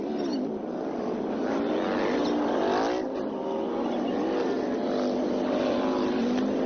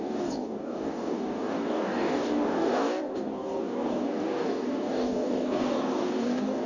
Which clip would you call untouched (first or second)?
first